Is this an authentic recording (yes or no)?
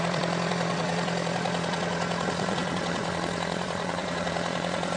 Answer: no